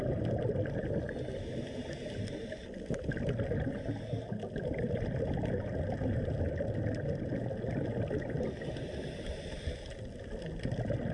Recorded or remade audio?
recorded